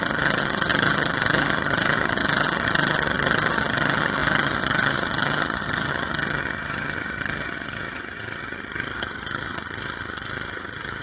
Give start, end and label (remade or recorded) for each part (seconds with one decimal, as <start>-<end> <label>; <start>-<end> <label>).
0.0-11.0 remade